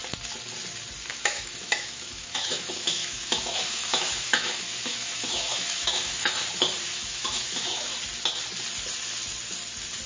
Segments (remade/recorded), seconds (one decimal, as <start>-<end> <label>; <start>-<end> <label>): 0.0-1.1 recorded; 1.1-6.4 remade; 6.4-6.9 recorded; 6.9-7.9 remade; 7.9-10.1 recorded

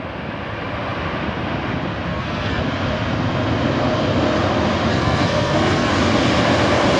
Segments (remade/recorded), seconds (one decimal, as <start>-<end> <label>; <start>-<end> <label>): 0.0-2.1 recorded; 2.1-2.6 remade; 2.6-4.9 recorded; 4.9-5.9 remade; 5.9-7.0 recorded

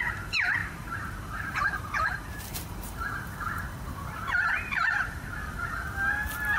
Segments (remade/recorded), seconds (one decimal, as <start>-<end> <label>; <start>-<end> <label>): 0.0-5.4 remade; 5.4-6.6 recorded